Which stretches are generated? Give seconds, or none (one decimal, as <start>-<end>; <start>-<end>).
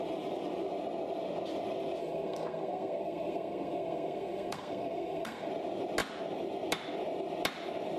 2.0-5.5